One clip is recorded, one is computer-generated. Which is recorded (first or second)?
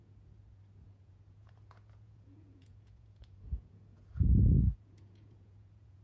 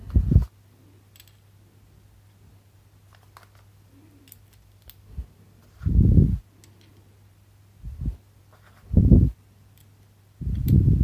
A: second